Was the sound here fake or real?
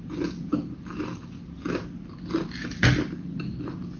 real